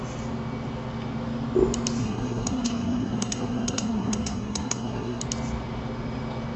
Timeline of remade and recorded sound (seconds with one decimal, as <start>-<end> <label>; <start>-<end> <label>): 0.0-2.0 recorded; 2.0-5.2 remade; 5.2-6.6 recorded

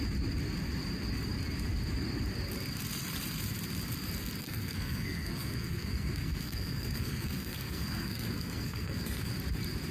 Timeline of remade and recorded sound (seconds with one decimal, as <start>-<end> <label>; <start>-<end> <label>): 0.0-4.4 recorded; 4.4-9.3 remade; 9.3-9.9 recorded

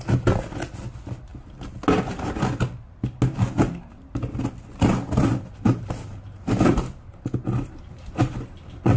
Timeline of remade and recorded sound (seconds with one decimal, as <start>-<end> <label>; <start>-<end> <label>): 0.0-9.0 recorded

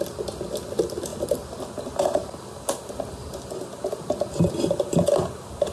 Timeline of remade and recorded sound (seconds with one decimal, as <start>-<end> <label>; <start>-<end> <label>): 0.0-5.7 recorded